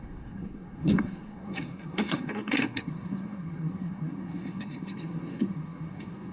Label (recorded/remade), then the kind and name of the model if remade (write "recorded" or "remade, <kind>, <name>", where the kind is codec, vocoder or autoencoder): remade, codec, SNAC